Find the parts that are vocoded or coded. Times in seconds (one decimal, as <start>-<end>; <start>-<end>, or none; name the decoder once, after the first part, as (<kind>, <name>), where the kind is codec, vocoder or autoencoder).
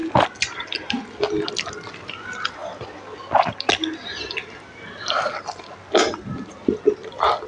none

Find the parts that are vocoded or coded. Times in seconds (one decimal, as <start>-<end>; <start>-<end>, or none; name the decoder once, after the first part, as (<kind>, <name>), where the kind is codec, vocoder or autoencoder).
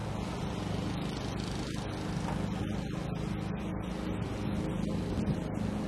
none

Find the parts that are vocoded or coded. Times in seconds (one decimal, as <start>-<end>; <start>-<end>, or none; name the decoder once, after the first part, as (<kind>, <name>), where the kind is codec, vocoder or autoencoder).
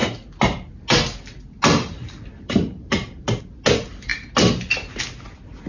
none